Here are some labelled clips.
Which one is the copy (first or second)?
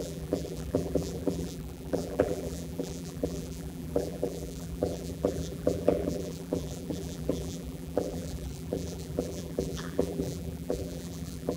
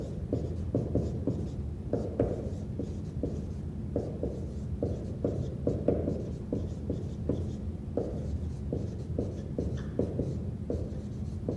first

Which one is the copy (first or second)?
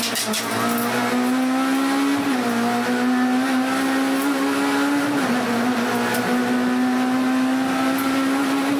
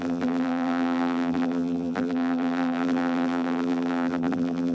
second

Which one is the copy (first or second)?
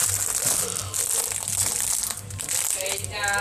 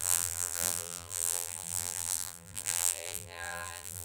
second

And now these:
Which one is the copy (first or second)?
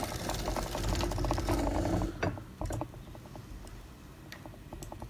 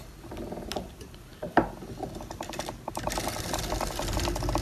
second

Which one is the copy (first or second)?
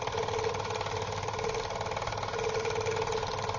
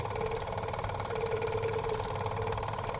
second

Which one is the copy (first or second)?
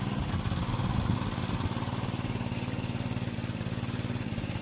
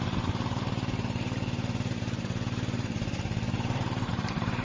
second